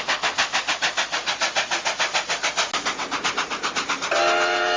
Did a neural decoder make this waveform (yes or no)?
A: no